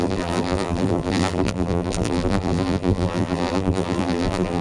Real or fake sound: fake